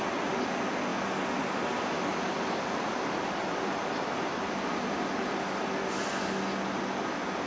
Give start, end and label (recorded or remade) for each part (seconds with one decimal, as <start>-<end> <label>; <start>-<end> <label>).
0.0-7.5 recorded